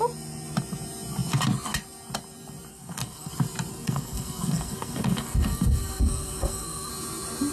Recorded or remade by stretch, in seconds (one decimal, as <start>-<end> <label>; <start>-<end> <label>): 0.0-2.7 recorded; 2.7-3.3 remade; 3.3-3.7 recorded; 3.7-6.9 remade; 6.9-7.5 recorded